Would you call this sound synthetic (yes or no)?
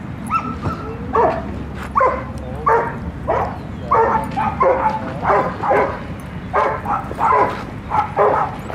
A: no